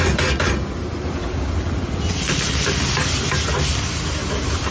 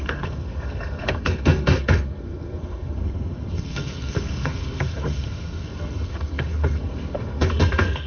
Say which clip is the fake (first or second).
second